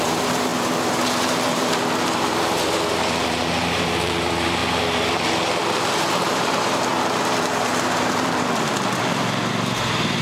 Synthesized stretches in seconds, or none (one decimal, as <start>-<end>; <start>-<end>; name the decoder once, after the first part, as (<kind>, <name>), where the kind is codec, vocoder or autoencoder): 0.0-4.6 (vocoder, BigVGAN v2); 5.1-10.2